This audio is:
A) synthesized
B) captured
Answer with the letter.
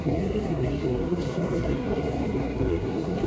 A